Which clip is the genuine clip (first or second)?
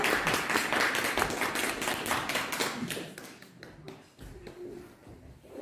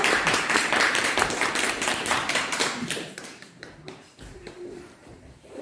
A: first